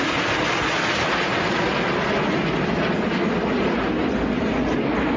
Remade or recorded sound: recorded